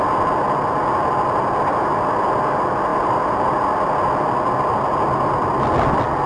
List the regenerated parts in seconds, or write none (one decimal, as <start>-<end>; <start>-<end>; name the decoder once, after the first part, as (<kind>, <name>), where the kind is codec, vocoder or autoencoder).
2.9-3.6 (vocoder, BigVGAN v2)